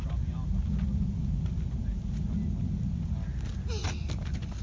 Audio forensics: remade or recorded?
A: recorded